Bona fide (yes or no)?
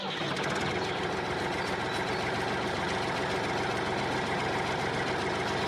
yes